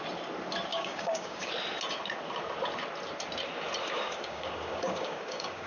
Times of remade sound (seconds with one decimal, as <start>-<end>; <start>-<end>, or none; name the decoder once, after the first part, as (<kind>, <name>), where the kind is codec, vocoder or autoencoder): 0.7-1.5 (codec, DAC); 3.8-5.7